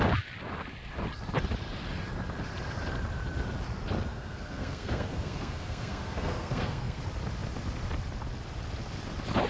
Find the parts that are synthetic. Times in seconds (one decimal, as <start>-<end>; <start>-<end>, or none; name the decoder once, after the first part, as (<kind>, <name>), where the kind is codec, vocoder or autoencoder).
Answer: 4.1-7.0 (codec, SNAC)